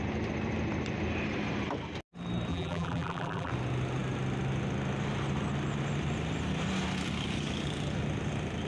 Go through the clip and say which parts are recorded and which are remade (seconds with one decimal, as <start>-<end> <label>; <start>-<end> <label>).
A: 0.0-2.5 recorded; 2.5-3.5 remade; 3.5-8.7 recorded